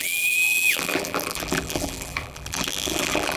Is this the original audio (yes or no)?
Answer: no